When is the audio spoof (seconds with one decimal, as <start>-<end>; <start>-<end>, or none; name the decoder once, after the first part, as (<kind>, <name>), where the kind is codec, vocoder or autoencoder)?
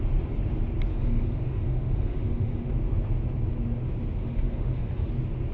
0.9-2.7 (autoencoder, DAC-VAE); 4.2-5.1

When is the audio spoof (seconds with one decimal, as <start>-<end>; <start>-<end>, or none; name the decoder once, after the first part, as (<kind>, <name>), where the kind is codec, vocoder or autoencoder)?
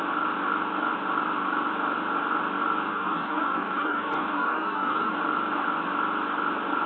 2.9-5.2 (codec, DAC)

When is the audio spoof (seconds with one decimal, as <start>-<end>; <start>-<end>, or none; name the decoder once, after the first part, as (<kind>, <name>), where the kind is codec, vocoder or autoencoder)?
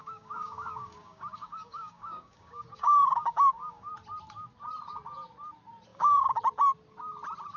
0.0-3.9 (codec, DAC); 5.9-6.4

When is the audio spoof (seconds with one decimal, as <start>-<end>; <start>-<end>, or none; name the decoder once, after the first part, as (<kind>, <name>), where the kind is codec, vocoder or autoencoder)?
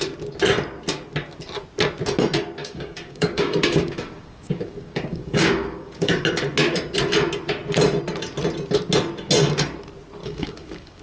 2.6-6.2 (codec, DAC); 10.2-11.0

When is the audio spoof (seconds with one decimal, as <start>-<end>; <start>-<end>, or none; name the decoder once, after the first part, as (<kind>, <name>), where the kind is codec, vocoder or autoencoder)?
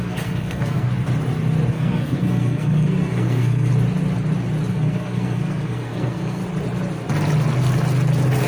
0.0-0.9 (codec, SNAC); 1.7-3.7; 4.7-6.4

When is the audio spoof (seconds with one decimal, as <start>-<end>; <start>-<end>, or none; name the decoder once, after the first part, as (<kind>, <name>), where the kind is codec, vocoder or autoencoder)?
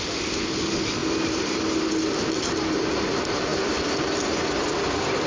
none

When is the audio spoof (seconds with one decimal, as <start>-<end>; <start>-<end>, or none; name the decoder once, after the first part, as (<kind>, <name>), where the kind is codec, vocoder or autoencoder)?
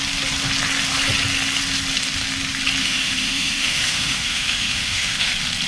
2.8-5.3 (autoencoder, DAC-VAE)